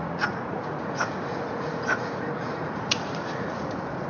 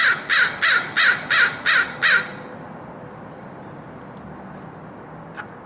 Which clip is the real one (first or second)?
second